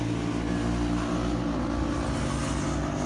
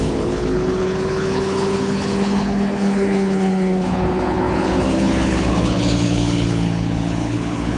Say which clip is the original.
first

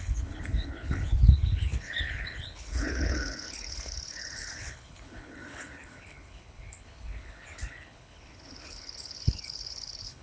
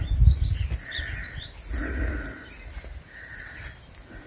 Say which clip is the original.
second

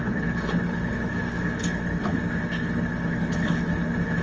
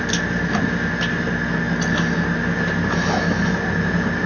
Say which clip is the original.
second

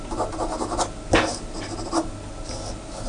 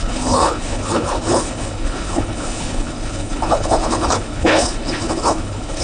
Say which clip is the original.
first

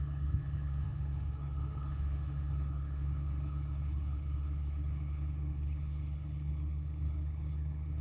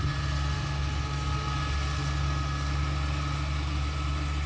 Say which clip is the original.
second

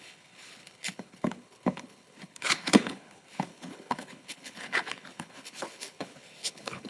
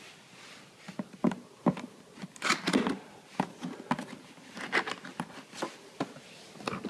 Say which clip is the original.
second